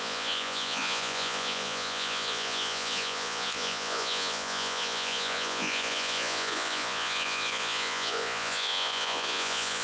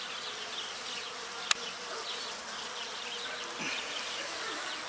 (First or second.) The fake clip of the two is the first